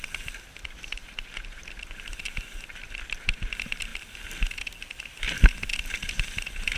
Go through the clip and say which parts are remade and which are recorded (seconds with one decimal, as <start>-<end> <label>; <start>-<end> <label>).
0.0-6.8 recorded